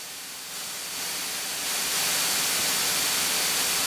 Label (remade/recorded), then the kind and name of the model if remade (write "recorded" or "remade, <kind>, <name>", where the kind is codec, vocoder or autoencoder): recorded